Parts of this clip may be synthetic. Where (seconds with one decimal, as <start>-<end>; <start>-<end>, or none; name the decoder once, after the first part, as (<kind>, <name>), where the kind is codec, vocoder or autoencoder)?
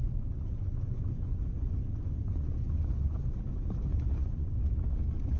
0.0-3.2 (vocoder, Vocos); 3.9-4.5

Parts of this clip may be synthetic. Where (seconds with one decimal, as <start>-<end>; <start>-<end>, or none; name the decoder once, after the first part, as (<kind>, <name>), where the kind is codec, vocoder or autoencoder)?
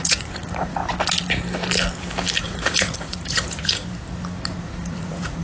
0.0-0.8 (vocoder, Vocos); 2.4-3.8; 4.6-5.4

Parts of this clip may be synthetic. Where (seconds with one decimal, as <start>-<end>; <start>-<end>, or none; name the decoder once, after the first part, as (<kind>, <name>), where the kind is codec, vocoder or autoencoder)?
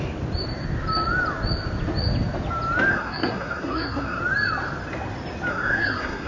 2.9-4.2 (codec, SNAC); 5.5-6.3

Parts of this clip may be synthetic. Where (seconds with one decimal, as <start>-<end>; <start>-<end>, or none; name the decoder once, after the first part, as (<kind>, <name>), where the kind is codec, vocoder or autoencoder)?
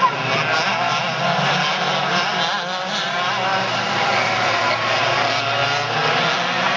none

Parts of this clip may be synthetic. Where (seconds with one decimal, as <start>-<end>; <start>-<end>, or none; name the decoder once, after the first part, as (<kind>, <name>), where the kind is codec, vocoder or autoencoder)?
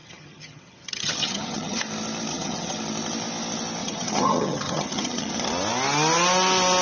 0.0-1.8 (vocoder, HiFi-GAN); 2.3-2.8; 3.8-5.3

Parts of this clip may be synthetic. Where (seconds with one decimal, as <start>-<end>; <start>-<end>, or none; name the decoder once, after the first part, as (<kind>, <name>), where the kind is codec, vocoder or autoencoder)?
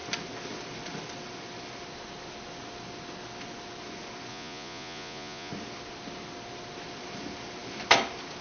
4.3-5.5 (vocoder, Vocos)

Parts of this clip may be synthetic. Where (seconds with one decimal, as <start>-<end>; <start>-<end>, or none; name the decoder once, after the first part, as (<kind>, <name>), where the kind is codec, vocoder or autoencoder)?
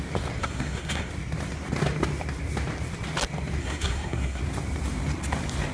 0.4-1.1 (codec, SNAC); 3.6-4.4